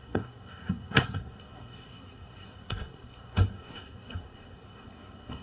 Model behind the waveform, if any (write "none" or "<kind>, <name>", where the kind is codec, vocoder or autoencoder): codec, SNAC